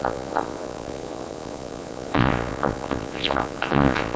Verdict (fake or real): fake